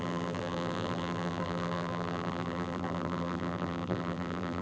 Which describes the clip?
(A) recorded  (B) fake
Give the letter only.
B